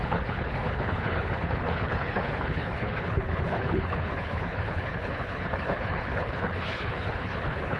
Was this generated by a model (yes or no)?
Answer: yes